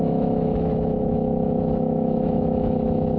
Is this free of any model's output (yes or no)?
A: no